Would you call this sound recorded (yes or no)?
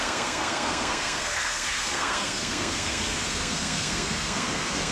no